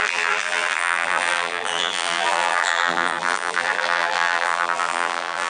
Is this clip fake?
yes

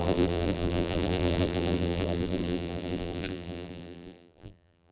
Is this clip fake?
yes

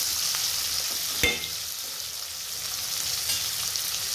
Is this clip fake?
no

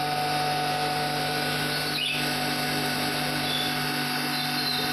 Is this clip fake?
no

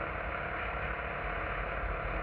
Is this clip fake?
no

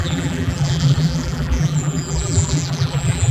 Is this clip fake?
yes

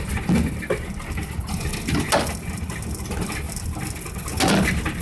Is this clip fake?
no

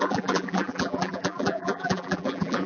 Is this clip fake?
yes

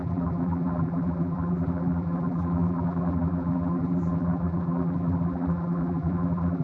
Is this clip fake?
yes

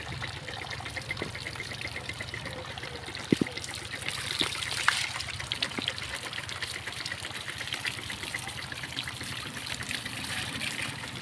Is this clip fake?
yes